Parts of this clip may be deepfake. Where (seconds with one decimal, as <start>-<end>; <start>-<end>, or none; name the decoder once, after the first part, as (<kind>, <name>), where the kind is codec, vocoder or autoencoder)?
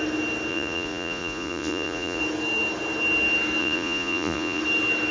0.5-2.2 (vocoder, Vocos); 3.6-4.6